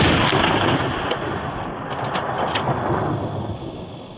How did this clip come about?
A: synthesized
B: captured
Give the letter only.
B